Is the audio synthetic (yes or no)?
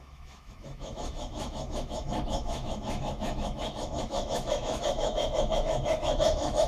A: yes